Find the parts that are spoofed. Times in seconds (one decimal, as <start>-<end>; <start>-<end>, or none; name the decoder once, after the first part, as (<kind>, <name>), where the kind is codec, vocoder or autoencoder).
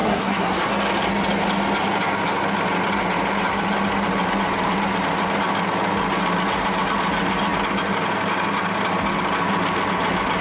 0.0-0.7 (codec, SNAC)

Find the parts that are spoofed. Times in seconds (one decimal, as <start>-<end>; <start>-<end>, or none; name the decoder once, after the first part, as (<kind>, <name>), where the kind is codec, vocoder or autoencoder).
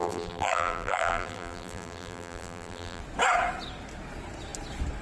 0.0-3.0 (vocoder, BigVGAN v2)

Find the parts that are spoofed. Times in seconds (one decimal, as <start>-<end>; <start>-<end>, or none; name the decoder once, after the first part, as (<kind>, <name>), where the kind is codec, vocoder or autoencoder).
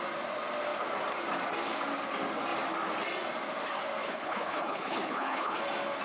4.0-5.6 (codec, HILCodec)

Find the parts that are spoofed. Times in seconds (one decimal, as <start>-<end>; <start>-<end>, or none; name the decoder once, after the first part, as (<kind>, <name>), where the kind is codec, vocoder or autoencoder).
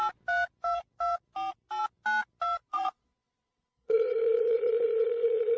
2.7-5.6 (vocoder, Vocos)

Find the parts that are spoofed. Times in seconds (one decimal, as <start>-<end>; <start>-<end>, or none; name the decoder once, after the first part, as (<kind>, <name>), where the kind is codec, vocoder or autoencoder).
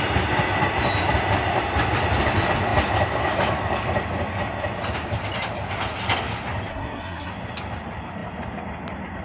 6.7-7.3 (codec, SNAC)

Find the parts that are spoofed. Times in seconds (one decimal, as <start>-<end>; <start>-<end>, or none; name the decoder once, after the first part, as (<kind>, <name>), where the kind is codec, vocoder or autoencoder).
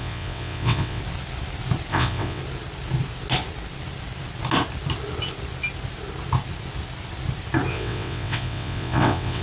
0.0-1.0 (vocoder, WaveNeXt); 1.9-2.4; 7.7-9.4